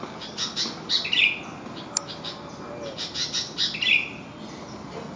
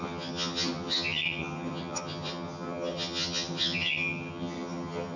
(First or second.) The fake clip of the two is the second